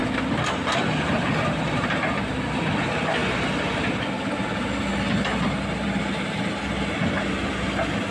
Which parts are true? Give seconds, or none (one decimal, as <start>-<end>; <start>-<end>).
2.7-8.1